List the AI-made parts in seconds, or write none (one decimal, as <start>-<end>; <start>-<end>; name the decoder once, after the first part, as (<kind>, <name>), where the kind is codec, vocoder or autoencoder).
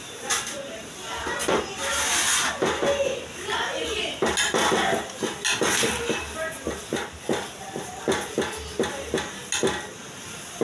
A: none